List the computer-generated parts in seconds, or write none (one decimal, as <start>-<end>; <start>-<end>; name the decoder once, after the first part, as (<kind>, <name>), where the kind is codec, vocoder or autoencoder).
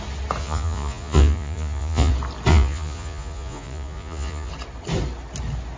0.4-2.1 (vocoder, Vocos); 2.5-4.5